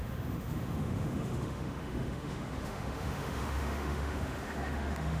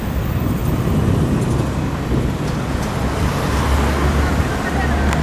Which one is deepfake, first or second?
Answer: first